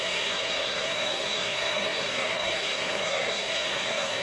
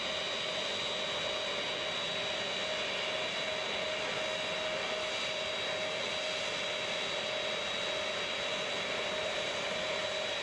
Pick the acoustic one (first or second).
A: second